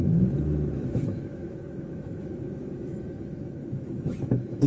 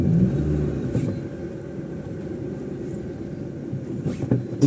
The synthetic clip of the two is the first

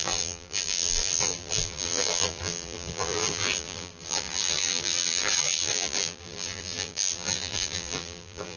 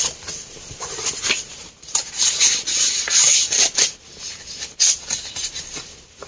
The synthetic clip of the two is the first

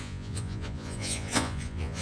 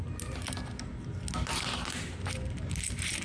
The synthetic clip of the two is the first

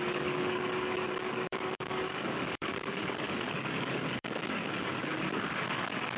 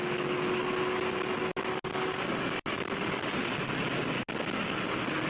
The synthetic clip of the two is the first